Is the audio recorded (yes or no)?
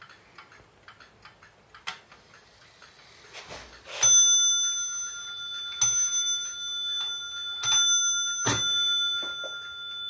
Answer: yes